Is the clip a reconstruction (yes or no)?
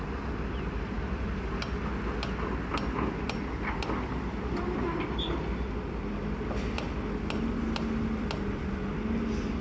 no